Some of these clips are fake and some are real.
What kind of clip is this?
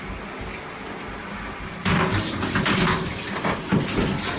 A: real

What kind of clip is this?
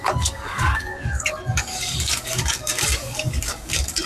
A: fake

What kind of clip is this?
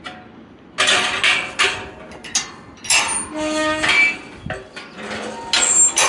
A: real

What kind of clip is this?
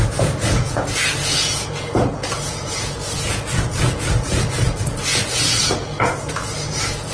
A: fake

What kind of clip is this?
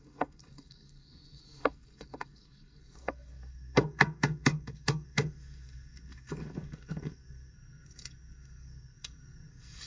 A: fake